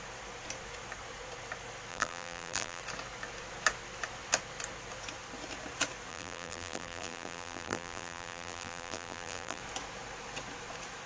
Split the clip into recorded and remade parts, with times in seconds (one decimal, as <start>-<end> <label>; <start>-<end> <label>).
0.0-1.9 recorded; 1.9-2.8 remade; 2.8-6.1 recorded; 6.1-9.6 remade; 9.6-11.1 recorded